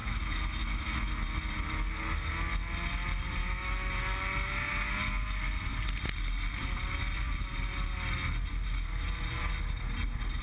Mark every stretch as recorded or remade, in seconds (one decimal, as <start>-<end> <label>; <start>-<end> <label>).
0.0-1.1 remade; 1.1-3.4 recorded; 3.4-3.9 remade; 3.9-10.4 recorded